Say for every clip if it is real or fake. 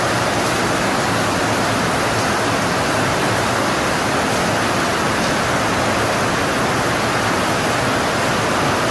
real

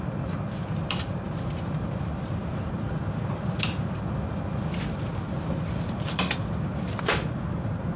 fake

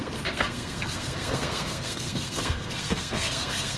fake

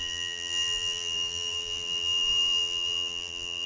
fake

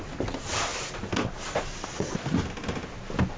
real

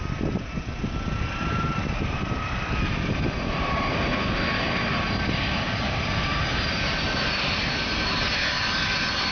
real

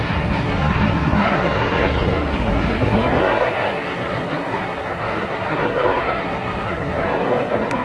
fake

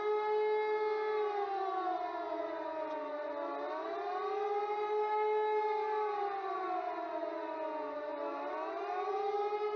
real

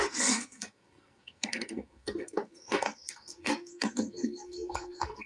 fake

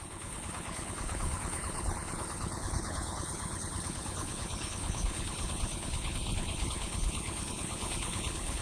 fake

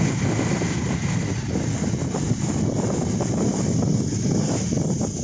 real